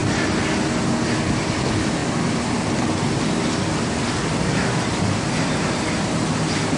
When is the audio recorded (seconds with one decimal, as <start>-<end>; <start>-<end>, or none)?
0.0-6.8